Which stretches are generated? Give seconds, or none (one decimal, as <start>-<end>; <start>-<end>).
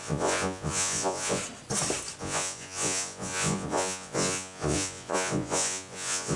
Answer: 0.0-1.4; 2.2-6.4